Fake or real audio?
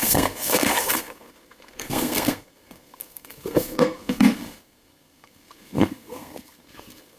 fake